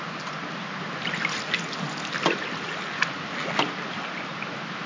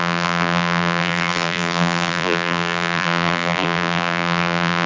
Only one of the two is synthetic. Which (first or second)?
second